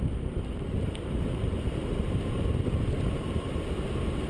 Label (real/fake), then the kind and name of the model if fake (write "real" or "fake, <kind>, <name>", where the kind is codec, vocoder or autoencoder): fake, vocoder, BigVGAN v2